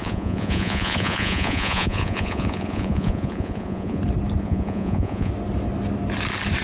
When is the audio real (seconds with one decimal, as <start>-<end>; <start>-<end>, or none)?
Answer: 4.0-4.4; 5.3-6.6